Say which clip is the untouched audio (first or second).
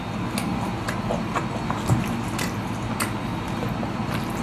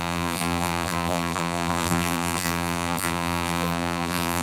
first